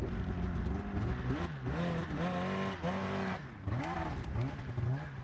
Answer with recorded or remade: recorded